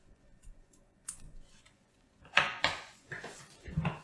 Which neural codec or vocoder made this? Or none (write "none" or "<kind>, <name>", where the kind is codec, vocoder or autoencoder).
vocoder, Vocos